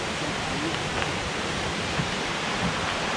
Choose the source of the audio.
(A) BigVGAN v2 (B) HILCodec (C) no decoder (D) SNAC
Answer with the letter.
C